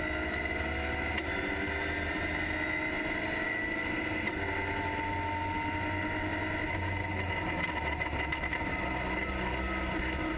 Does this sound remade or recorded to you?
recorded